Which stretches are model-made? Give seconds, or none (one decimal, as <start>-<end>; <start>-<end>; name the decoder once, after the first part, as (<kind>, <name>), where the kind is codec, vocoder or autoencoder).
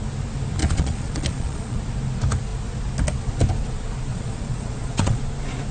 0.6-1.8 (vocoder, Vocos); 4.1-5.2